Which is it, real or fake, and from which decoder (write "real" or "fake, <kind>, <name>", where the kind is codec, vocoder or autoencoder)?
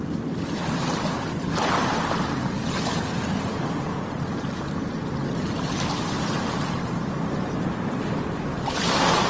real